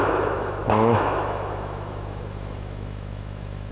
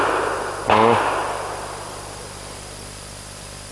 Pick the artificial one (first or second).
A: first